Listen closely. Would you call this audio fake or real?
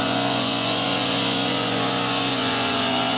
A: fake